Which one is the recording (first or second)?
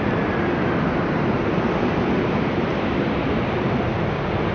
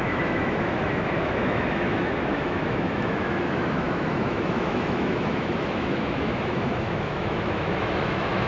first